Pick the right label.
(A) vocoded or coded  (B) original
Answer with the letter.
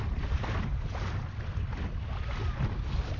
B